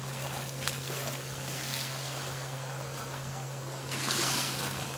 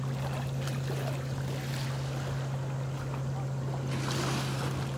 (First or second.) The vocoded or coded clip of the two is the first